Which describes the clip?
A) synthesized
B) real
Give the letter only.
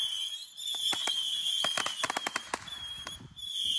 B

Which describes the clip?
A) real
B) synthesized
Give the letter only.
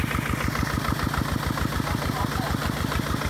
A